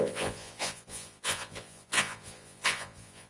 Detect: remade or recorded remade